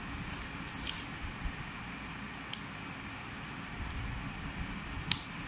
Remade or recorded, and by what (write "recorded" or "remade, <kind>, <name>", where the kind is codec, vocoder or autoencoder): recorded